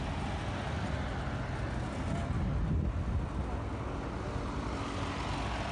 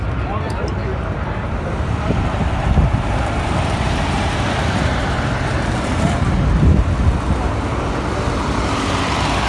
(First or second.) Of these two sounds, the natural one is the first